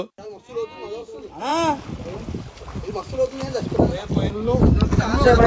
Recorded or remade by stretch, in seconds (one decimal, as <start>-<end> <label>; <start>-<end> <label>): 0.0-5.5 recorded